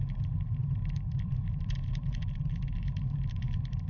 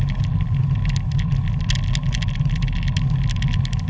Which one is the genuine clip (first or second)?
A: second